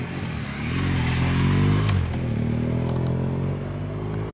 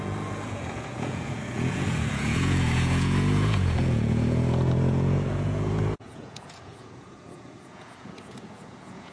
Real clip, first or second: first